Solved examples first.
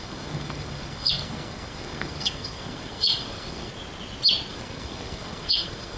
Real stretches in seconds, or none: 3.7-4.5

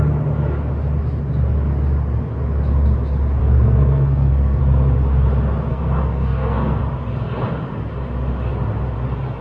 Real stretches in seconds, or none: 0.0-3.4; 4.6-5.7; 6.8-9.4